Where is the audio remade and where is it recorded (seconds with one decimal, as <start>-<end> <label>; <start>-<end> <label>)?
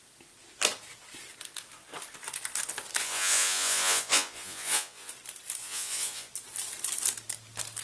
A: 0.0-3.0 recorded; 3.0-5.1 remade; 5.1-5.6 recorded; 5.6-6.3 remade; 6.3-7.8 recorded